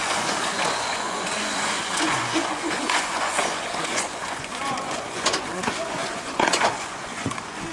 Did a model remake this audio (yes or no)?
yes